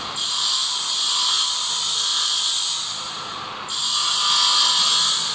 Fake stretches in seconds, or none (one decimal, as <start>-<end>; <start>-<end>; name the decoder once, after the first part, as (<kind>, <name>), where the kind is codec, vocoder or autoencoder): none